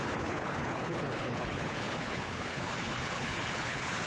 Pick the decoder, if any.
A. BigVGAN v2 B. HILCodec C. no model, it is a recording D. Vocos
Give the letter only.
B